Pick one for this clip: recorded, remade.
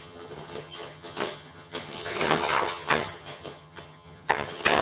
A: remade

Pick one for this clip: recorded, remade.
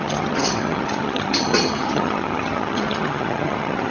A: remade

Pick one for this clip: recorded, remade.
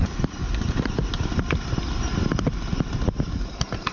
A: recorded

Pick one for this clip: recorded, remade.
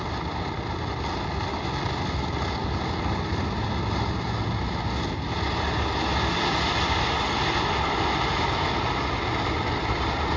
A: recorded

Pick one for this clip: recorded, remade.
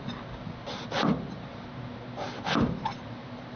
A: recorded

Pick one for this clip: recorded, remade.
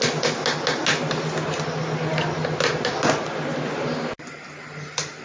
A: recorded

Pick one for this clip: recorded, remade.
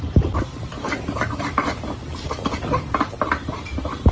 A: recorded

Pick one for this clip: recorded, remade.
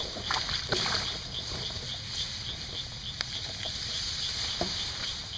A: recorded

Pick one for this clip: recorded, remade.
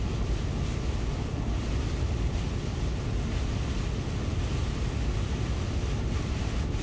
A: recorded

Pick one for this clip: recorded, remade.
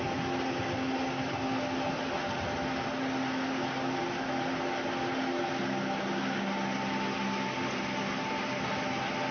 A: recorded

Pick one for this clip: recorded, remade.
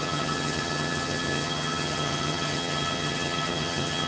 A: remade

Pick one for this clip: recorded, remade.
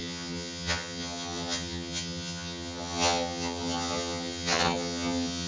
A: remade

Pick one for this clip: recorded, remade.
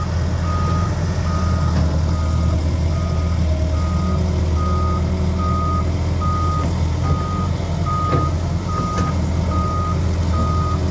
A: recorded